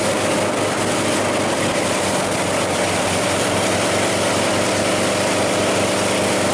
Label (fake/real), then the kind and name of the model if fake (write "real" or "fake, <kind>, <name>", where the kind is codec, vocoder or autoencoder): real